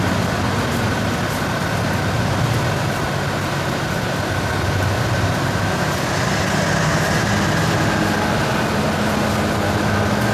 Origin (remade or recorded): recorded